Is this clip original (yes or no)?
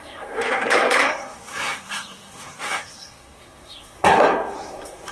no